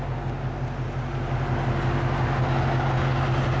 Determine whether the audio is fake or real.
real